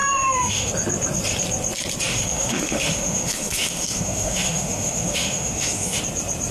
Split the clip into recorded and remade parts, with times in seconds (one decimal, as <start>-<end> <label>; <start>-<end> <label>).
0.0-0.7 remade; 0.7-2.1 recorded; 2.1-6.0 remade; 6.0-6.5 recorded